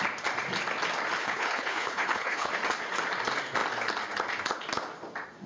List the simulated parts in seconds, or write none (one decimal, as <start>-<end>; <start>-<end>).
1.2-2.5